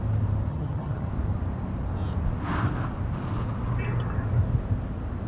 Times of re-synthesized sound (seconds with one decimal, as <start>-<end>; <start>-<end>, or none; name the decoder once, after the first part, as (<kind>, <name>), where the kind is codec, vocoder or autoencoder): 0.5-1.1 (vocoder, HiFi-GAN)